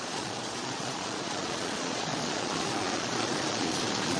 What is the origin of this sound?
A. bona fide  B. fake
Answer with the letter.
B